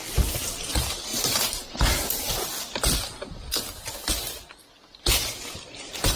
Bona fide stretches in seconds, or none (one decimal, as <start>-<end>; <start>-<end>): 0.0-1.1; 2.4-6.2